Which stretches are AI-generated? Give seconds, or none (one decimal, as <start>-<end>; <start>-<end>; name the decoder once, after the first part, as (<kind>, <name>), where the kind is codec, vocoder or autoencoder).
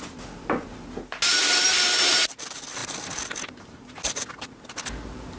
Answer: none